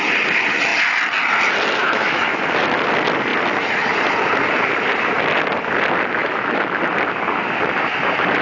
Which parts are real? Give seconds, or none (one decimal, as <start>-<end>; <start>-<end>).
0.0-1.8; 2.4-6.2; 6.8-8.4

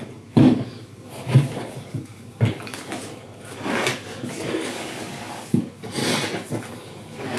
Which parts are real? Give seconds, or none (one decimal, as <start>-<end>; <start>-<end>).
6.0-6.7